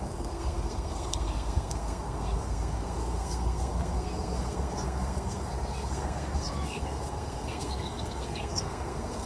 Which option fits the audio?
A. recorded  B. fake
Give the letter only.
B